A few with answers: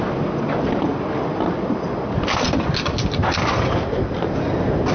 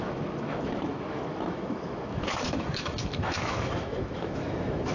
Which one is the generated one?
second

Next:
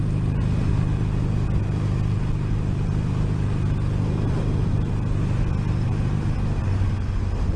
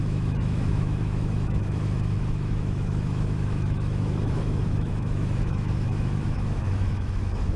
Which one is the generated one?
second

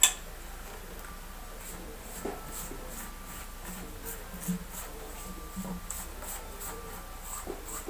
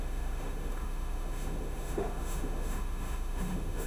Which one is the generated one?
second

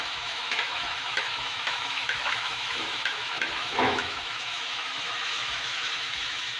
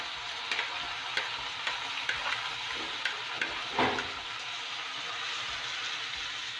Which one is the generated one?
first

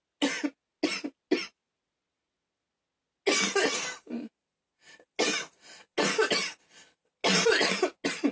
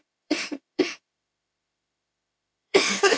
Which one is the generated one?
second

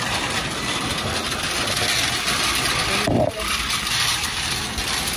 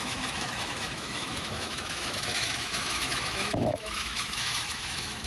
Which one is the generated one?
second